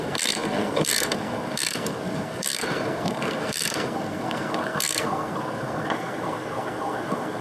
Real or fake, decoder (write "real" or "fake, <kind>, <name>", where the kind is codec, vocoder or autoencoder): fake, codec, SNAC